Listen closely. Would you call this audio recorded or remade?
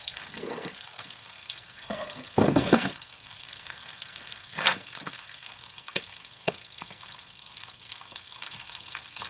remade